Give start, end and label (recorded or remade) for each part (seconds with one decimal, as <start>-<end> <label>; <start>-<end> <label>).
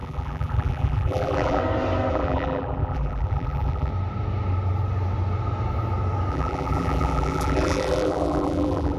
0.0-1.6 remade; 1.6-2.1 recorded; 2.1-3.9 remade; 3.9-6.3 recorded; 6.3-9.0 remade